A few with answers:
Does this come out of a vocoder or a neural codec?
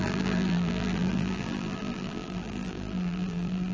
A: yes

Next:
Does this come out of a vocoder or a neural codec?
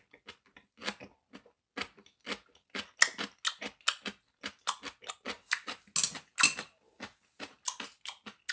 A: no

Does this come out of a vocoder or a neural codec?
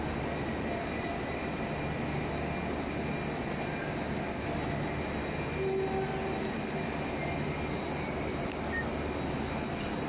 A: no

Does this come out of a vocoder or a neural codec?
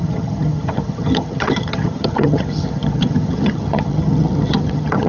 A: yes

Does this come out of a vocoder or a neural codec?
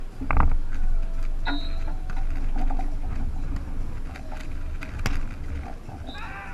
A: no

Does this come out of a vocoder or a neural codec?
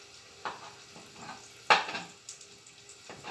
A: no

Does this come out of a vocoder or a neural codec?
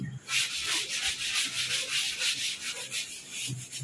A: no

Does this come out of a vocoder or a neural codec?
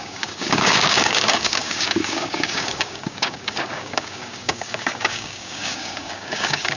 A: yes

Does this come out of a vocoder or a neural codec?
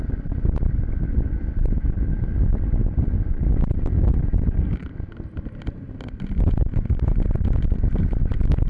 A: no